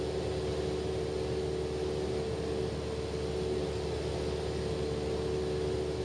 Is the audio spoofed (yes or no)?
no